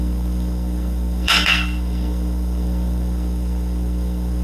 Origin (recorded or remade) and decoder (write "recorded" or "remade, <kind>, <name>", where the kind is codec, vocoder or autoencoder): remade, codec, SNAC